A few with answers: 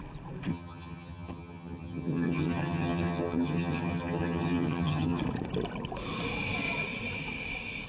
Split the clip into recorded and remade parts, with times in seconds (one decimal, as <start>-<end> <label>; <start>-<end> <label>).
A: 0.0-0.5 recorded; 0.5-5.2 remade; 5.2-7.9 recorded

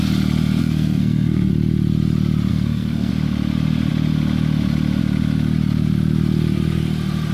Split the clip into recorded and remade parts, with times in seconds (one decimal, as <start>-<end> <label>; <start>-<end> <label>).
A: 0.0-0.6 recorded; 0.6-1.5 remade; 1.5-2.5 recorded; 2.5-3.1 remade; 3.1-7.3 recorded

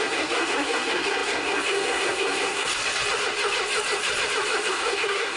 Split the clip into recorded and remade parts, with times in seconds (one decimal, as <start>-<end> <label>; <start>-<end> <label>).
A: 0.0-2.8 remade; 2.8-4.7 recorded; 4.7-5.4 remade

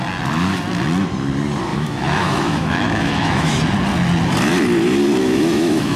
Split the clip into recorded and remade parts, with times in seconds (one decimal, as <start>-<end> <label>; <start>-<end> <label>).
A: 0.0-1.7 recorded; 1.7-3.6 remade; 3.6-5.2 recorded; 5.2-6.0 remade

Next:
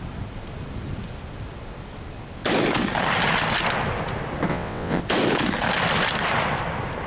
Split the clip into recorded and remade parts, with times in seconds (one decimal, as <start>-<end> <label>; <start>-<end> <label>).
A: 0.0-4.5 recorded; 4.5-5.0 remade; 5.0-7.1 recorded

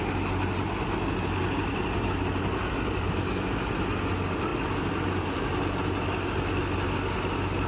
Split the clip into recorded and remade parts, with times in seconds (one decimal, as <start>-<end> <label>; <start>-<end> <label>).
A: 0.0-7.7 recorded

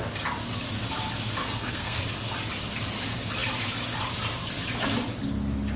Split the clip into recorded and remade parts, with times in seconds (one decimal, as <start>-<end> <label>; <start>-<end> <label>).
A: 0.0-1.4 recorded; 1.4-2.0 remade; 2.0-5.8 recorded

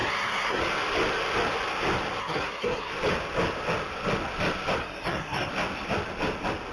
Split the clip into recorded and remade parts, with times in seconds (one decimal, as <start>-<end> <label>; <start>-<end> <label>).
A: 0.0-0.6 remade; 0.6-2.2 recorded; 2.2-2.9 remade; 2.9-4.8 recorded; 4.8-5.5 remade; 5.5-6.7 recorded